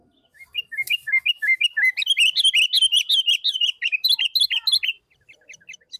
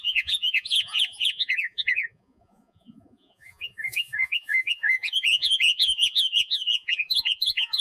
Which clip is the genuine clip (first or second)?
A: first